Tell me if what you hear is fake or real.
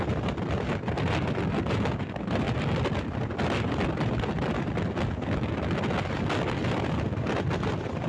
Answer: real